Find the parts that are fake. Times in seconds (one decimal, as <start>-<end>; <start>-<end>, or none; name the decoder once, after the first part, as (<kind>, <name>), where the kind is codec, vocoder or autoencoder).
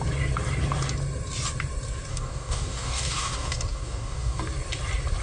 2.1-4.4 (codec, DAC)